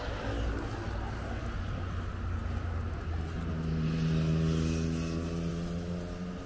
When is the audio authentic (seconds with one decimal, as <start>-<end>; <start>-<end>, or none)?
0.0-6.5